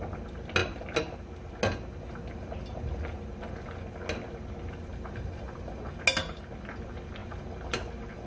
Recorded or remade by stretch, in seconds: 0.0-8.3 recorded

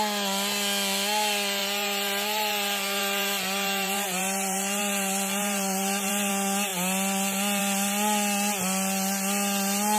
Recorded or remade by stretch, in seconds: 0.0-1.6 recorded; 1.6-6.3 remade; 6.3-10.0 recorded

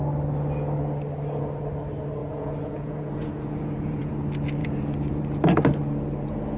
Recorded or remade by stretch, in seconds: 0.0-2.2 recorded; 2.2-4.1 remade; 4.1-4.6 recorded; 4.6-5.2 remade; 5.2-6.6 recorded

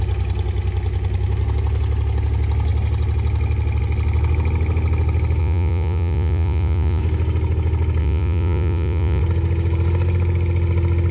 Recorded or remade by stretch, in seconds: 0.0-5.4 recorded; 5.4-7.0 remade; 7.0-8.0 recorded; 8.0-9.2 remade; 9.2-11.1 recorded

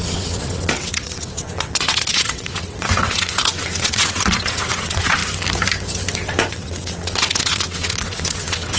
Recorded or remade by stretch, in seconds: 0.0-5.2 remade; 5.2-6.5 recorded; 6.5-8.8 remade

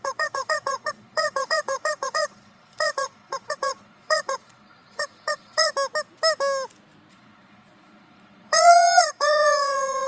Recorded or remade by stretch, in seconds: 0.0-5.7 remade; 5.7-7.1 recorded; 7.1-10.1 remade